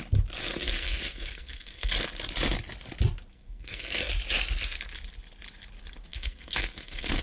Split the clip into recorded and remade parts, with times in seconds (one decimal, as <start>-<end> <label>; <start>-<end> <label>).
0.0-0.4 recorded; 0.4-1.9 remade; 1.9-3.3 recorded; 3.3-4.1 remade; 4.1-6.1 recorded; 6.1-7.2 remade